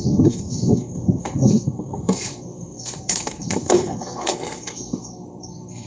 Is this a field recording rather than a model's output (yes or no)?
no